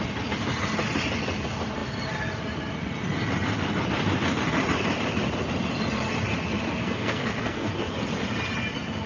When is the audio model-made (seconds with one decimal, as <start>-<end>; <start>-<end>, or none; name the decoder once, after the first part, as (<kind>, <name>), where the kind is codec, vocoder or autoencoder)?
6.8-7.7 (codec, SNAC)